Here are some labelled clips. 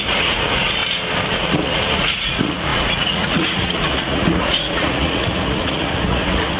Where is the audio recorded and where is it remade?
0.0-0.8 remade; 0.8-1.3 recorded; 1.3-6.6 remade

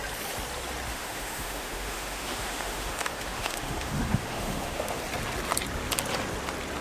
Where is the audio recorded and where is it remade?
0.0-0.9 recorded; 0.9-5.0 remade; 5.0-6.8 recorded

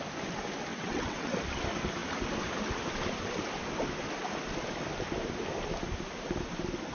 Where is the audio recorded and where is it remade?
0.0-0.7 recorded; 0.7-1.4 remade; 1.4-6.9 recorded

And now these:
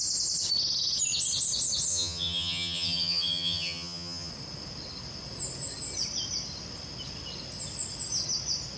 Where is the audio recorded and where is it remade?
0.0-1.9 recorded; 1.9-4.3 remade; 4.3-8.8 recorded